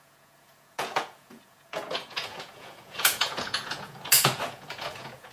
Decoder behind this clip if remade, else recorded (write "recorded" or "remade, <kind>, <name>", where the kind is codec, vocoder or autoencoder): remade, vocoder, Vocos